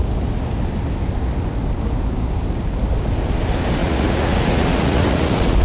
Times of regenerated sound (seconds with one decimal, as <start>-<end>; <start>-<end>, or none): 3.8-5.6

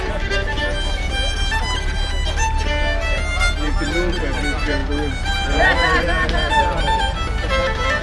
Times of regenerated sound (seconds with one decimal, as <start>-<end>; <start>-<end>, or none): none

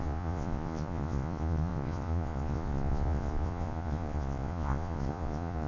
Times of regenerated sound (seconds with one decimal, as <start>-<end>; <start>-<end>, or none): 0.0-5.7